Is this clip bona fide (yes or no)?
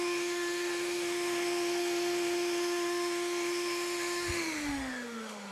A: no